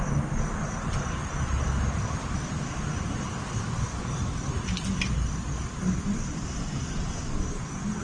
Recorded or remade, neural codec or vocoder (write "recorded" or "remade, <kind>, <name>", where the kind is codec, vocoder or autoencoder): recorded